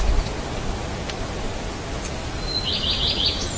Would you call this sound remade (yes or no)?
no